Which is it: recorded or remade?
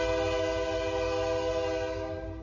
recorded